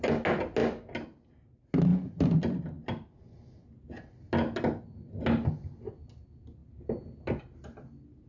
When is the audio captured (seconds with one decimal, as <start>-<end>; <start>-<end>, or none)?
0.0-8.3